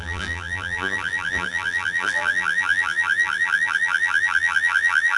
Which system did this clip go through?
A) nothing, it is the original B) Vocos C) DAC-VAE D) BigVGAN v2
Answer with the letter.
D